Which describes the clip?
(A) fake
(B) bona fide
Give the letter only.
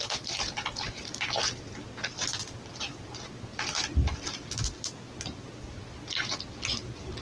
B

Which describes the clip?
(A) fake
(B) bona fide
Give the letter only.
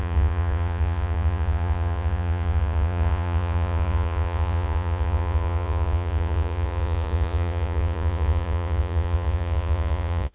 A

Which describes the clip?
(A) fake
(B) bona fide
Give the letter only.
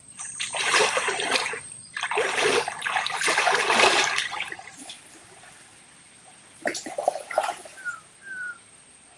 A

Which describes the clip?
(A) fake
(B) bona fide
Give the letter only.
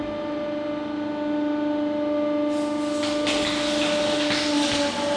B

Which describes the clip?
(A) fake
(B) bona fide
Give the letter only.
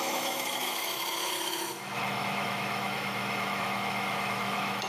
A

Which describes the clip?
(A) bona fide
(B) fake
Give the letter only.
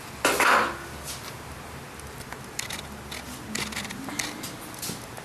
A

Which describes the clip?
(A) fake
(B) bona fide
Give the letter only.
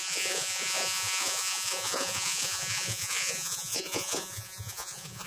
A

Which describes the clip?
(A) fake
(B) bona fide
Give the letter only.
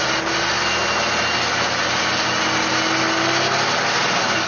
B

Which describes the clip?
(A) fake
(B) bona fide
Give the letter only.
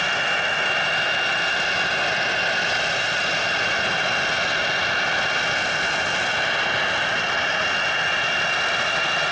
B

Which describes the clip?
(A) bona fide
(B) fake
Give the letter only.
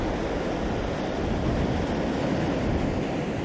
A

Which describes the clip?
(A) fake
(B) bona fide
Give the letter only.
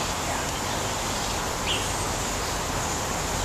B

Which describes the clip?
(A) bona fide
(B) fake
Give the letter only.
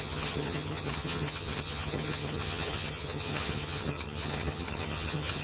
B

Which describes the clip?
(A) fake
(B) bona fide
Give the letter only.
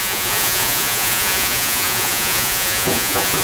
A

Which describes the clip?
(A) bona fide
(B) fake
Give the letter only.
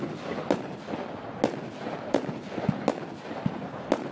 A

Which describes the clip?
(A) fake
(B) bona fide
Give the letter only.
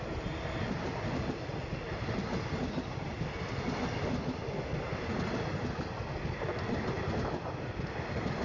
B